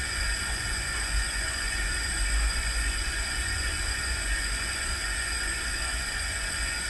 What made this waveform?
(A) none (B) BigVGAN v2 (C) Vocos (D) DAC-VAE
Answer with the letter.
C